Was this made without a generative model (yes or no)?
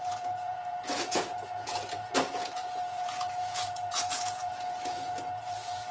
no